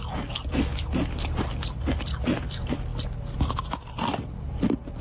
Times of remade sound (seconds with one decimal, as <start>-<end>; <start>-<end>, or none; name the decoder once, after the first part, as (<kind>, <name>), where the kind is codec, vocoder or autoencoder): none